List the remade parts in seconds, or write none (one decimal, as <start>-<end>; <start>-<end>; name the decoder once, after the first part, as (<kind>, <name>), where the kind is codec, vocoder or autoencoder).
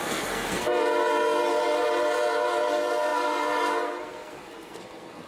0.0-1.5 (codec, SNAC); 2.7-5.3